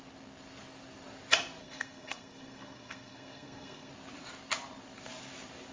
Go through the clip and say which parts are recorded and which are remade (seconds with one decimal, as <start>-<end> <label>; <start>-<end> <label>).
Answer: 0.0-1.6 recorded; 1.6-3.9 remade; 3.9-5.7 recorded